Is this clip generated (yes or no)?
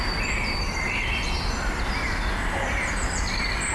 no